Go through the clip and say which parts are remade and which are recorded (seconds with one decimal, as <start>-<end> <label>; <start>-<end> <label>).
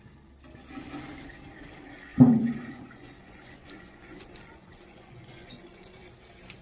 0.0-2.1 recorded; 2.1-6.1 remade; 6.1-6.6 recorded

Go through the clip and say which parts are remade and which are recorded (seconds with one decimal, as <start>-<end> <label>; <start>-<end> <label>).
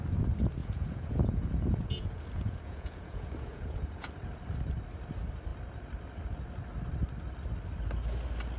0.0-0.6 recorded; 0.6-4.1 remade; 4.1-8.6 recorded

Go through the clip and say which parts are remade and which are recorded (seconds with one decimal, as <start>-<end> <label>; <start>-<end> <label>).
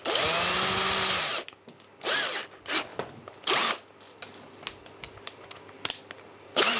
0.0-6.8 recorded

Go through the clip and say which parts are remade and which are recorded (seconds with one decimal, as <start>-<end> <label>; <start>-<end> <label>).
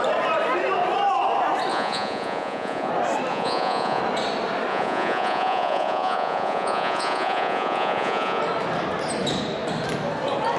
0.0-1.7 recorded; 1.7-2.9 remade; 2.9-3.3 recorded; 3.3-4.0 remade; 4.0-4.7 recorded; 4.7-8.4 remade; 8.4-10.6 recorded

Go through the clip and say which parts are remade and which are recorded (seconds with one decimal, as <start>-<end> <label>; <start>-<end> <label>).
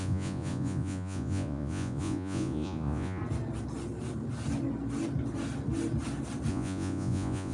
0.0-3.2 remade; 3.2-6.5 recorded; 6.5-7.5 remade